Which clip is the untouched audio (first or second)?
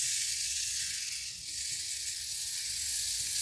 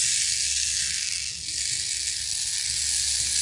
second